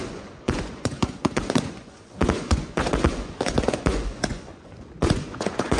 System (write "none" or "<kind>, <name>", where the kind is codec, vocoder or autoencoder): vocoder, Vocos